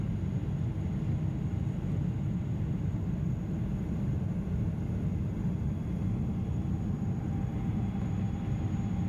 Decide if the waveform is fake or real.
real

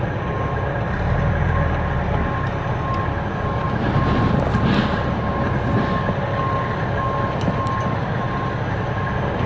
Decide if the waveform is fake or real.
real